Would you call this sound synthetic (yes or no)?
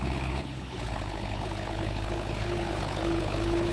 yes